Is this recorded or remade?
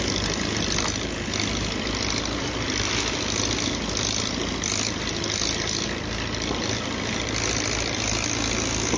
recorded